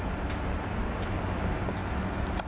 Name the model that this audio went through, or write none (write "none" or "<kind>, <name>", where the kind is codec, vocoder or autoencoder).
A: none